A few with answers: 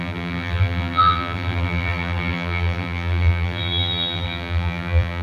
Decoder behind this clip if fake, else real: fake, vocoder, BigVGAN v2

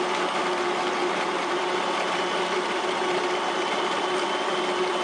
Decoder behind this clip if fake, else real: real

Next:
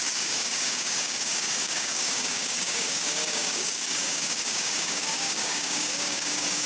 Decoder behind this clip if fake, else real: fake, codec, DAC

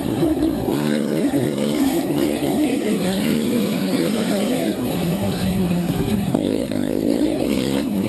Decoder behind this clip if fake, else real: fake, codec, SNAC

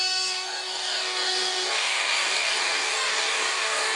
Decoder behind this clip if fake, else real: fake, codec, DAC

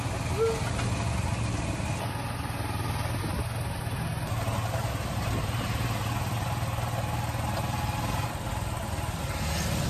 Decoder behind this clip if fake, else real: real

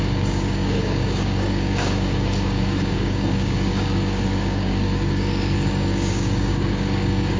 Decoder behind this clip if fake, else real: fake, codec, DAC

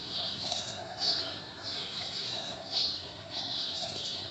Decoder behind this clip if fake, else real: fake, codec, SNAC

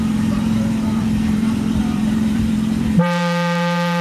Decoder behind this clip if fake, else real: fake, vocoder, BigVGAN v2